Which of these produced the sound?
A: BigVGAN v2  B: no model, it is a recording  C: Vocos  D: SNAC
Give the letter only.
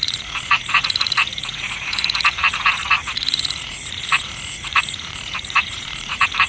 C